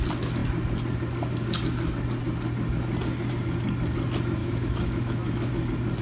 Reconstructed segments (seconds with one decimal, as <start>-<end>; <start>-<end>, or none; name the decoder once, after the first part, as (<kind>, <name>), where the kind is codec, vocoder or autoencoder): 4.4-5.5 (autoencoder, DAC-VAE)